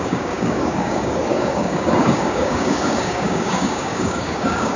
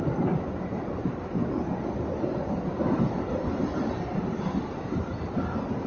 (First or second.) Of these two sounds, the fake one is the first